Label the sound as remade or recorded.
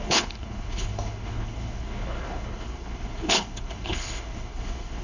remade